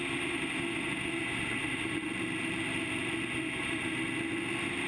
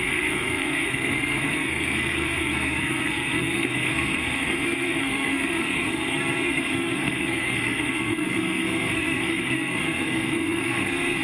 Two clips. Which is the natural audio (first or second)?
first